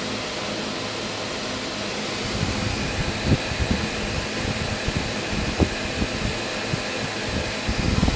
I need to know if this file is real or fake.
real